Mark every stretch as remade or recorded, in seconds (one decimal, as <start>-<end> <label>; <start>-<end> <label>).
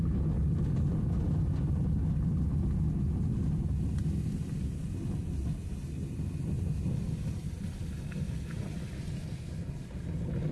0.0-10.5 recorded